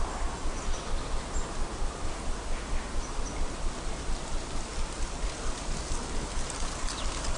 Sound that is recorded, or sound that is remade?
recorded